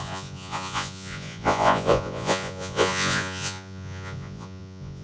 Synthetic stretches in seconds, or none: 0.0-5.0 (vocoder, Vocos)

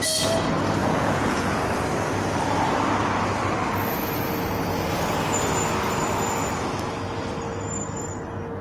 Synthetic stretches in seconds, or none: 0.8-1.6 (vocoder, Vocos)